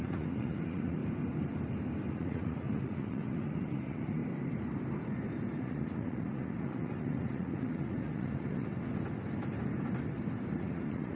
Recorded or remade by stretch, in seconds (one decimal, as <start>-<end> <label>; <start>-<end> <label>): 0.0-1.0 remade; 1.0-2.1 recorded; 2.1-4.2 remade; 4.2-5.6 recorded; 5.6-8.7 remade; 8.7-10.6 recorded; 10.6-11.2 remade